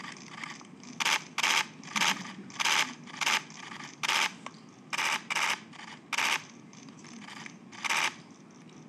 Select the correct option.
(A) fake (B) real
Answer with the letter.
B